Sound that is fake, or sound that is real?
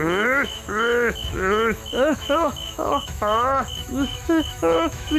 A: fake